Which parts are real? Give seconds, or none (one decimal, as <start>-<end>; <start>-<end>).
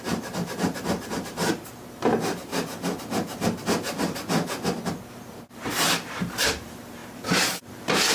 2.5-5.5